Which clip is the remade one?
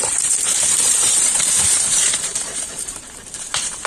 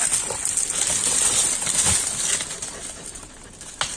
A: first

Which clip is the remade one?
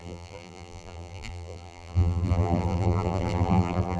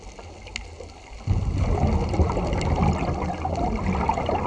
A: first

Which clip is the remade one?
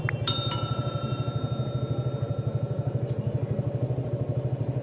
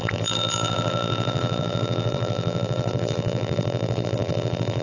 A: second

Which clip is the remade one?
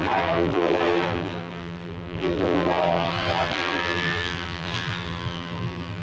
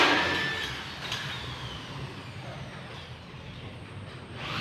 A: first